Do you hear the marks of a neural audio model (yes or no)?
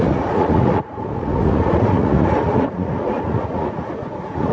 yes